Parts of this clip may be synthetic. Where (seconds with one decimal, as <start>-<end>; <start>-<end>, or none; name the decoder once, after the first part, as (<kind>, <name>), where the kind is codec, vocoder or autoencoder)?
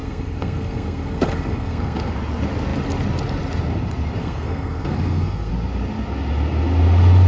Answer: 0.0-2.1 (codec, SNAC); 4.2-5.5